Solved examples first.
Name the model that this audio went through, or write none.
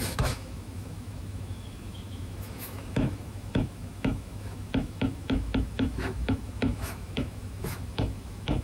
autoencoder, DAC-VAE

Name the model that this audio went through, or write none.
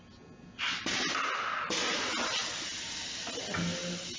none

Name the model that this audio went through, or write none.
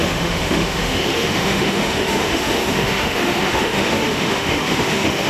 autoencoder, DAC-VAE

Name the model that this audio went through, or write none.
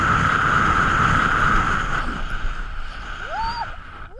none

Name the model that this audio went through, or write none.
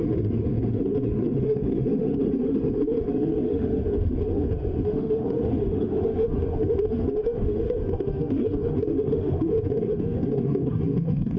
autoencoder, DAC-VAE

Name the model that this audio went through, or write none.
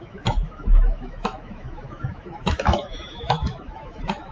autoencoder, DAC-VAE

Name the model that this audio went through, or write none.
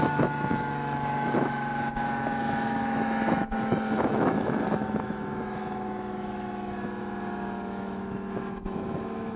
autoencoder, DAC-VAE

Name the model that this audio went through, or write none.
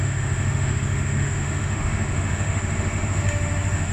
autoencoder, DAC-VAE